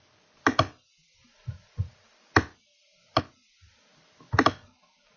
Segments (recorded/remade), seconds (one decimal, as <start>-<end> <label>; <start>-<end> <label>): 0.0-1.1 recorded; 1.1-2.3 remade; 2.3-2.7 recorded; 2.7-3.2 remade; 3.2-5.2 recorded